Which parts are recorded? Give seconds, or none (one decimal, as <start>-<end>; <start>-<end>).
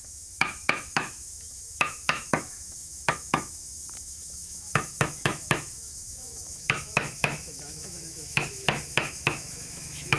none